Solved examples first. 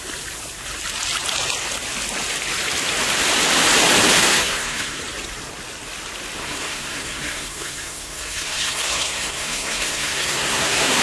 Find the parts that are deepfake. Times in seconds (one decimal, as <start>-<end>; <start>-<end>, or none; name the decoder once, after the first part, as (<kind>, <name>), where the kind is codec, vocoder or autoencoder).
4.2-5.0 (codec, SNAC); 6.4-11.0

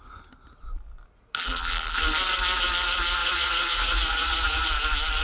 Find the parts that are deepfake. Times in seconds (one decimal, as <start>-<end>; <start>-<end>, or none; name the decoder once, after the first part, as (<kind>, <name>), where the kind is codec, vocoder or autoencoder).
3.2-4.7 (vocoder, Vocos)

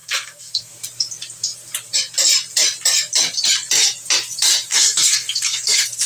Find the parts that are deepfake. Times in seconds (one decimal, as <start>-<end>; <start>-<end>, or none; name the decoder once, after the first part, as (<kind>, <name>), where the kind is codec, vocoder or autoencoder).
0.0-0.7 (codec, SNAC); 4.7-6.1